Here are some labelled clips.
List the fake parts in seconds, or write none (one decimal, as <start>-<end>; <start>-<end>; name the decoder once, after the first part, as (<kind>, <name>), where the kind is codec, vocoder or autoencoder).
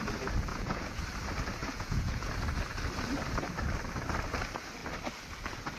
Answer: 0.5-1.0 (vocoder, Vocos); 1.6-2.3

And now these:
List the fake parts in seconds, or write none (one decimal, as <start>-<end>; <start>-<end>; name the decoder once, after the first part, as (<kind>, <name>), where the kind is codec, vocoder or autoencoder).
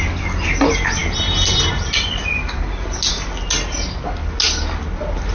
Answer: none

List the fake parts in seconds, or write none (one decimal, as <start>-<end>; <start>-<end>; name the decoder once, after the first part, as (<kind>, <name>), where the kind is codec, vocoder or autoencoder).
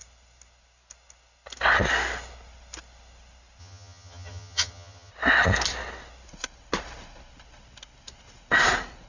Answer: 3.6-5.1 (vocoder, HiFi-GAN)